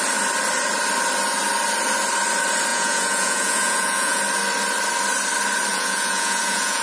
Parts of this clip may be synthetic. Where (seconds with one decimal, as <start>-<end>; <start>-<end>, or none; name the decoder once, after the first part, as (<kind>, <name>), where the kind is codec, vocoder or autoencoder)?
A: 2.7-4.2 (vocoder, Vocos); 5.7-6.8